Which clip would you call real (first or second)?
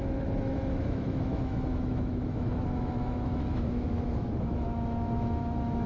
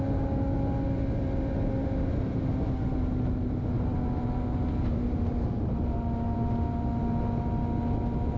second